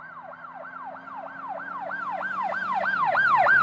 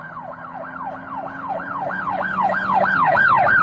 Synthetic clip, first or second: second